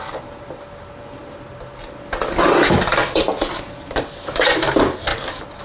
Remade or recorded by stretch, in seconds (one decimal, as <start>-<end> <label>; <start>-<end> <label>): 0.0-5.6 recorded